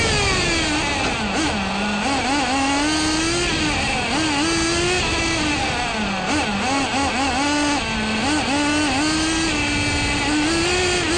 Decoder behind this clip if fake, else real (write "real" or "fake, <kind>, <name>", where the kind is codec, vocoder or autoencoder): real